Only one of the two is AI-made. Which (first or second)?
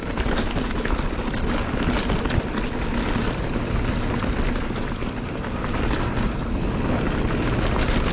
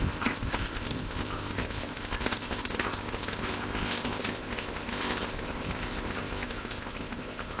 second